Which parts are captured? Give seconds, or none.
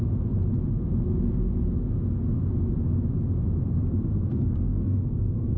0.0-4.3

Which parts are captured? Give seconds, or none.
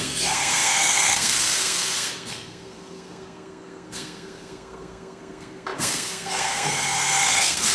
none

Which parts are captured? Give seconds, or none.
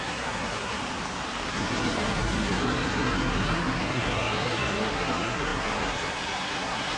0.8-1.5